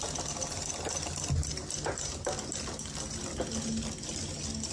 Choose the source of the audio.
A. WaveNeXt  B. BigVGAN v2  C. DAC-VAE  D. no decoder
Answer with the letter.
D